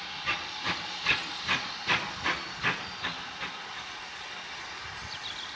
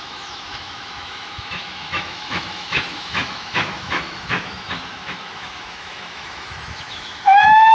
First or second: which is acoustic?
first